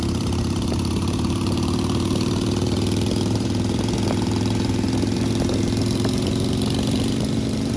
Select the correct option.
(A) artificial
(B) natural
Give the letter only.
A